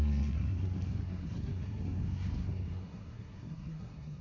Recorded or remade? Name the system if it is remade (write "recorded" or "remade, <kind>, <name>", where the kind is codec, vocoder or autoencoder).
remade, codec, SNAC